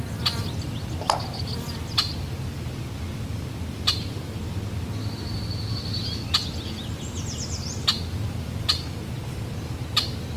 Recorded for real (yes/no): yes